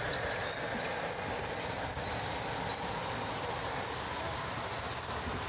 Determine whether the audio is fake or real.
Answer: real